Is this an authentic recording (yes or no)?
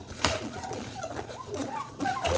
no